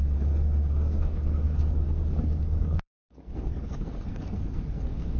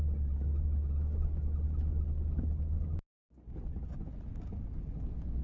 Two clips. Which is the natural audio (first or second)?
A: second